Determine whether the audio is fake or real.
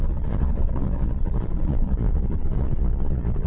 fake